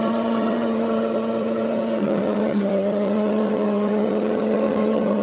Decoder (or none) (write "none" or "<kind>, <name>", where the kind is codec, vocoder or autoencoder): vocoder, HiFi-GAN